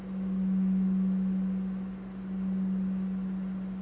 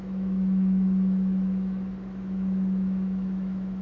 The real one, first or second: first